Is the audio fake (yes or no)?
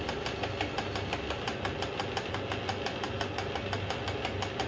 no